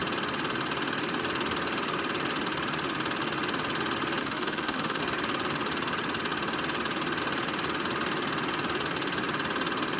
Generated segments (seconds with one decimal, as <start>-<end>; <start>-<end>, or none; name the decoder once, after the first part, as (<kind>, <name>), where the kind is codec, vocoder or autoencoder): 4.2-5.0 (autoencoder, DAC-VAE)